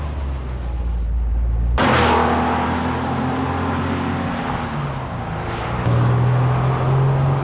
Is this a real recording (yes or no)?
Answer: yes